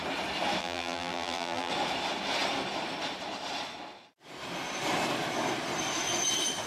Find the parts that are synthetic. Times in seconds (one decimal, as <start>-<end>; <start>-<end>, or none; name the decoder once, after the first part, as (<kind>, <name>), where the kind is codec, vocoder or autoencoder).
0.6-1.7 (vocoder, BigVGAN v2)